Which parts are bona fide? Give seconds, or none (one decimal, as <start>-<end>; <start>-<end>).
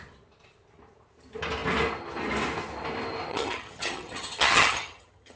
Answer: 0.0-3.3